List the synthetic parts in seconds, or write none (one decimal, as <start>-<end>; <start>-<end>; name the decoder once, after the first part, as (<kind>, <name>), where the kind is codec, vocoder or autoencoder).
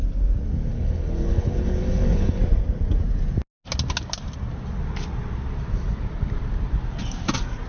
0.7-2.4 (codec, HILCodec)